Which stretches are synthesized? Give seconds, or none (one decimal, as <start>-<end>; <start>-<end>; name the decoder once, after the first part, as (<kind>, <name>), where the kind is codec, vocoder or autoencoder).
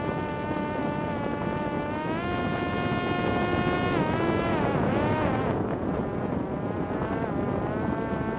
4.5-7.1 (vocoder, Vocos)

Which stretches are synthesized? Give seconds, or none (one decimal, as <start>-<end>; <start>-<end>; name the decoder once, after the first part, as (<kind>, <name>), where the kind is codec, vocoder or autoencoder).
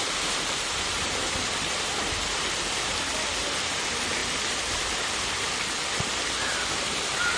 0.0-4.2 (vocoder, BigVGAN v2); 6.0-7.4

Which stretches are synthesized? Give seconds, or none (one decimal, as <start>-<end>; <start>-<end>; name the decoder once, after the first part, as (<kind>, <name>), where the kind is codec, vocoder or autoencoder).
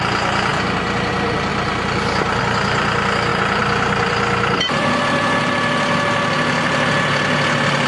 1.5-2.4 (vocoder, BigVGAN v2); 3.3-5.5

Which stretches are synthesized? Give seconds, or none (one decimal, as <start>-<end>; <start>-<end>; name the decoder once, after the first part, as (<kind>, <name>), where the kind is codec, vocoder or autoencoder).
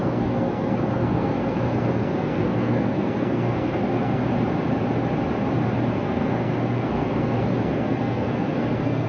0.0-4.2 (codec, SNAC); 5.9-9.1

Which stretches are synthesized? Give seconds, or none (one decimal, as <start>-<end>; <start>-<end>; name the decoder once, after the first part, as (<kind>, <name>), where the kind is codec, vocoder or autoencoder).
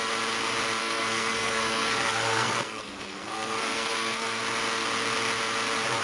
0.8-4.4 (codec, SNAC)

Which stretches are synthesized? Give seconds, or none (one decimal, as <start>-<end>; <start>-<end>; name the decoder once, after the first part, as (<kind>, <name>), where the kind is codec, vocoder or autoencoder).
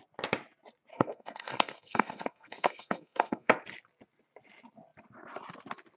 0.9-3.5 (codec, SNAC)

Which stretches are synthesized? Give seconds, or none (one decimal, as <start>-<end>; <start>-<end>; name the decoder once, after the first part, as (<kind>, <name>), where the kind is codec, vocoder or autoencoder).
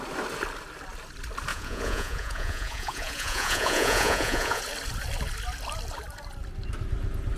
1.5-4.6 (vocoder, Vocos)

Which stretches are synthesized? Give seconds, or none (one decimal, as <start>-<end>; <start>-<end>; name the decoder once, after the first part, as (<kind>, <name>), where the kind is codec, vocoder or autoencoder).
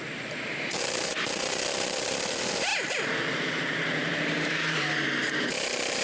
0.0-1.1 (vocoder, BigVGAN v2); 1.7-6.0